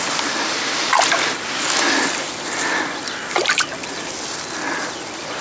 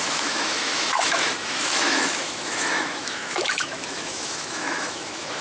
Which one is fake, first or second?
second